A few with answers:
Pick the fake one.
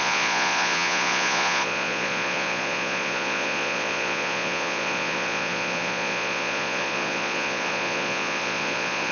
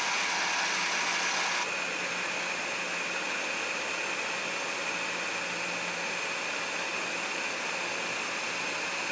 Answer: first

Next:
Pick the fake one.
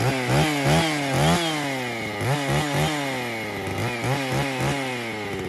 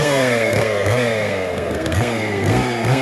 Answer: second